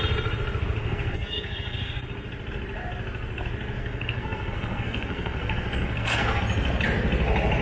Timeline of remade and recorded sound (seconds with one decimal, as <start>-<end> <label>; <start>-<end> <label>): 0.0-0.8 recorded; 0.8-2.0 remade; 2.0-3.8 recorded; 3.8-6.4 remade; 6.4-7.6 recorded